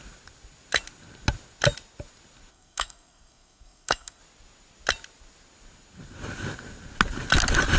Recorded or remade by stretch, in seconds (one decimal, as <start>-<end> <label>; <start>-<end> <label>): 0.0-2.5 recorded; 2.5-4.2 remade; 4.2-7.8 recorded